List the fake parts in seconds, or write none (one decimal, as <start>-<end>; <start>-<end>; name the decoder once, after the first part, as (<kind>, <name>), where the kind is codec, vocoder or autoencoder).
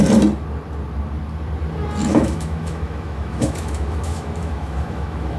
2.1-5.4 (autoencoder, DAC-VAE)